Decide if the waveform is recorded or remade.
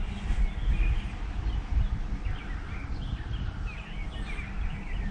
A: recorded